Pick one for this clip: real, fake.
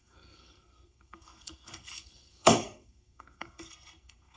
fake